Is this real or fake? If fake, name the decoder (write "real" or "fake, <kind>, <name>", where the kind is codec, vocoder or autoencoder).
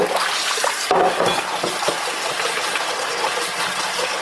real